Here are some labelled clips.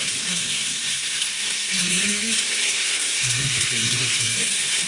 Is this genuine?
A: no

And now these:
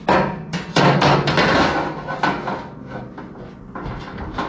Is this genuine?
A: yes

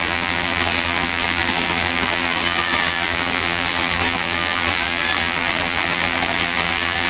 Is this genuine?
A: no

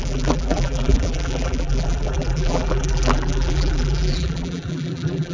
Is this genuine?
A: no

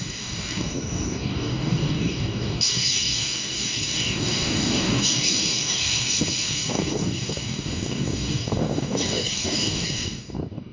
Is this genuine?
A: no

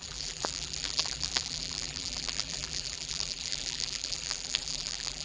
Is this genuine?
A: no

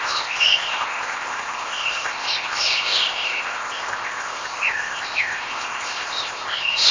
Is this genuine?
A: no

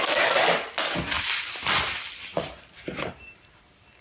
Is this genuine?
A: yes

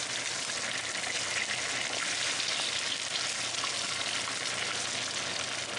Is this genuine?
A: yes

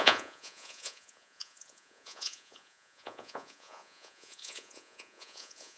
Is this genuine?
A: no